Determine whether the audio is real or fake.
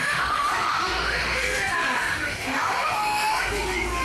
fake